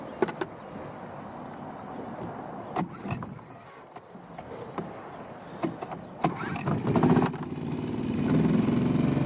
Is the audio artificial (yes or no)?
no